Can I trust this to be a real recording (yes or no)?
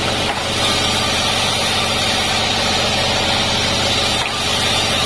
yes